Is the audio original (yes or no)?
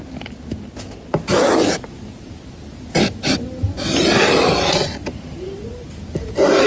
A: yes